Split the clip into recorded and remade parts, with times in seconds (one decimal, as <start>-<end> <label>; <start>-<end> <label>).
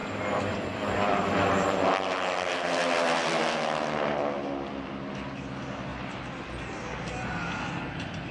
0.0-3.4 remade; 3.4-8.3 recorded